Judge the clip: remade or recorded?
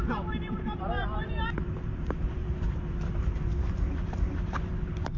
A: remade